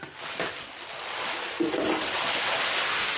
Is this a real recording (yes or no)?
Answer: yes